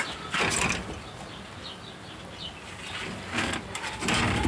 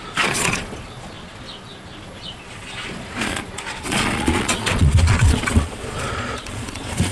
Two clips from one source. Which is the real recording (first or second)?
first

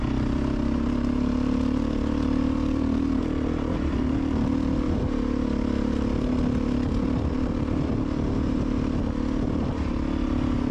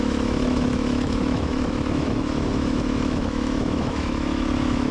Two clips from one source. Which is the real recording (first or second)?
first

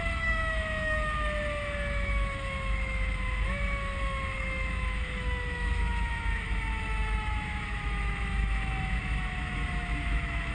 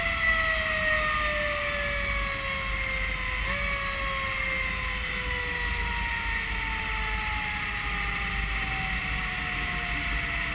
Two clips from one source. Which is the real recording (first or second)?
second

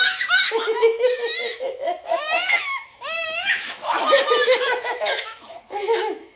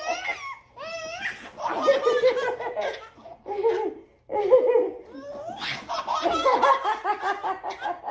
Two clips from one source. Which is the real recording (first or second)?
second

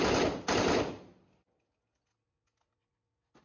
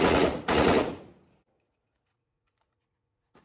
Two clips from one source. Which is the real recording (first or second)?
first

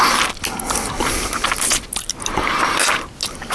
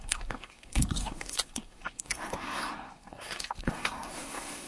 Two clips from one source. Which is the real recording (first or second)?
first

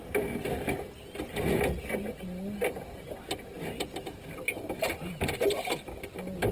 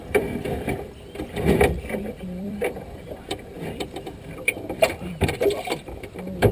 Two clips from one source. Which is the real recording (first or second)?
first